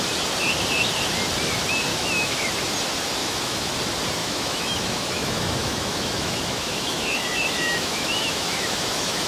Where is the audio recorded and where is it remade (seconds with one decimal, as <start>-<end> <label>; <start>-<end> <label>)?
0.0-1.9 recorded; 1.9-2.5 remade; 2.5-3.2 recorded; 3.2-3.7 remade; 3.7-4.2 recorded; 4.2-9.3 remade